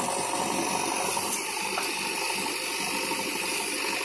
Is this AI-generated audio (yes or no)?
no